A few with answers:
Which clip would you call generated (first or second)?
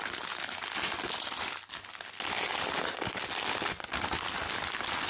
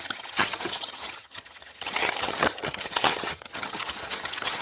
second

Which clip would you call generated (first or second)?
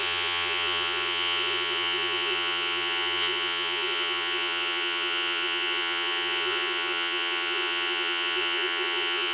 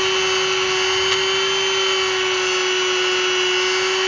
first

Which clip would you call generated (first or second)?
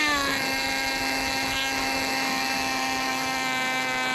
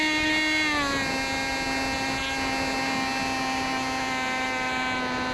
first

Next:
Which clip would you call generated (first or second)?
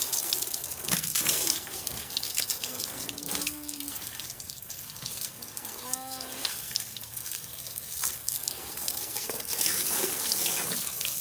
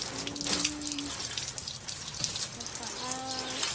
first